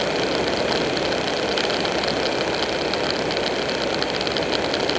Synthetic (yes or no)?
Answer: no